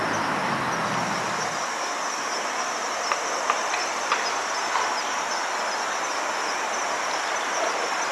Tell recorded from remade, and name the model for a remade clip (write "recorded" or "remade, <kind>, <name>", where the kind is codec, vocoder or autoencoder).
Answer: recorded